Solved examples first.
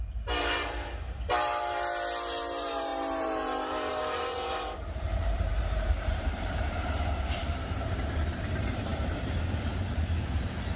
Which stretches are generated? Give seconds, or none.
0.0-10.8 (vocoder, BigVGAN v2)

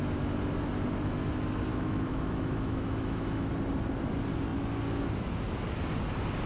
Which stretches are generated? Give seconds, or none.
1.7-3.5 (autoencoder, DAC-VAE)